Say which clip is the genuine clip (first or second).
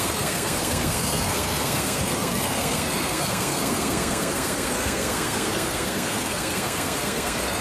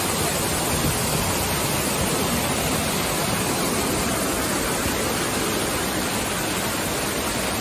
second